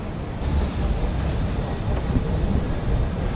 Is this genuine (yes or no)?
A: yes